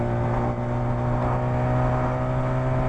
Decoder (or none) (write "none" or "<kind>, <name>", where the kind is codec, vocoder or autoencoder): none